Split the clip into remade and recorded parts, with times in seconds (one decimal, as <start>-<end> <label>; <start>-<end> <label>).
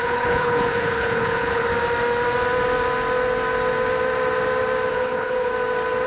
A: 0.0-1.7 remade; 1.7-4.9 recorded; 4.9-5.5 remade; 5.5-6.1 recorded